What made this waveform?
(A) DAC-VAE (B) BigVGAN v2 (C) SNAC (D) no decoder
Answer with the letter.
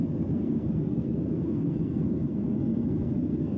C